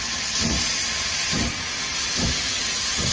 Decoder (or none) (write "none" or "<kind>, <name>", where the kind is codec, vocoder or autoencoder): none